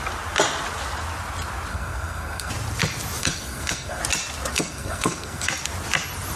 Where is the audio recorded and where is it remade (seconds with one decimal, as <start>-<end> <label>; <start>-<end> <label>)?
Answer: 0.0-1.7 recorded; 1.7-2.5 remade; 2.5-3.2 recorded; 3.2-4.0 remade; 4.0-4.5 recorded; 4.5-5.5 remade; 5.5-6.4 recorded

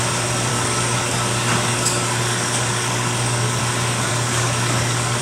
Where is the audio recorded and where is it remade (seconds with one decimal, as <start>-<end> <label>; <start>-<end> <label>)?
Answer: 0.0-0.5 recorded; 0.5-3.6 remade; 3.6-4.1 recorded; 4.1-5.2 remade